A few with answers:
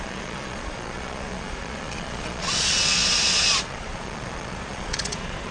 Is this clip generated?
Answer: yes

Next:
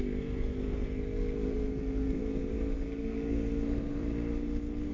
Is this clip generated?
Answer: yes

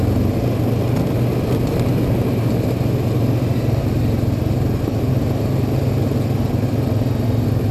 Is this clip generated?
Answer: no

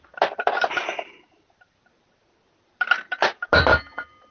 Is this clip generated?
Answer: no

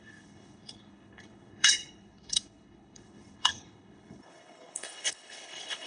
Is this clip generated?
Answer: yes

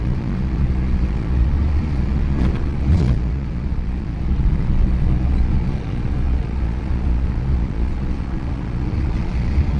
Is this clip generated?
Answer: yes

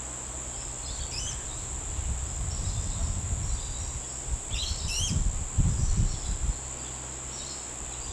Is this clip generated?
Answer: no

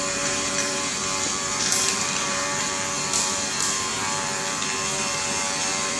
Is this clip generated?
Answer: yes